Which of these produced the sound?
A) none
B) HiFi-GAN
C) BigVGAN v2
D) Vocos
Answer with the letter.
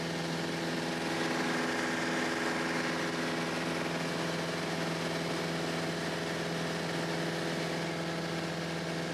A